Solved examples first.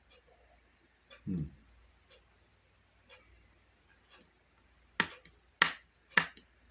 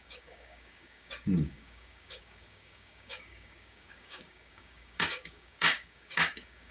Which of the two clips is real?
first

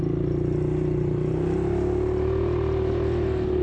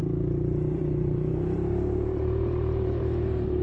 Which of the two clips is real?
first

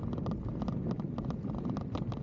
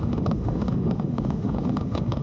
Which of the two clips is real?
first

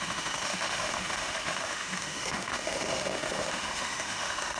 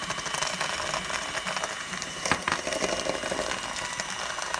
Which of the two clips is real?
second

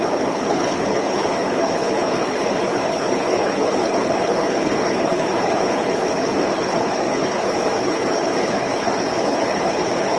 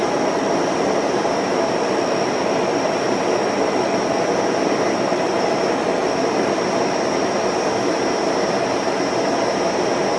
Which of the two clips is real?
second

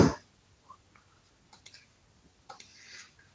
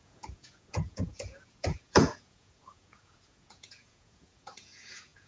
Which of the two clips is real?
first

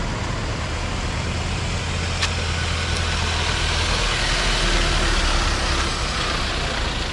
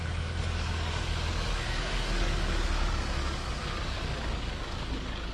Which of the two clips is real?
first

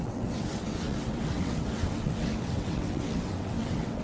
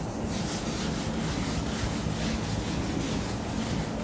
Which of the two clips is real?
second